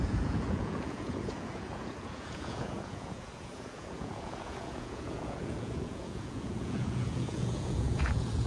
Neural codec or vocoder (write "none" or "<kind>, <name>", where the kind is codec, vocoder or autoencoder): vocoder, Vocos